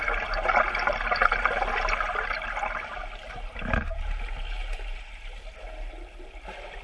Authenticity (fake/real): real